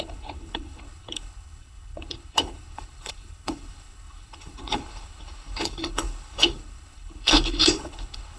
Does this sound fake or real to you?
fake